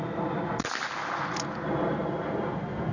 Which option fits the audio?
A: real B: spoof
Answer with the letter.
A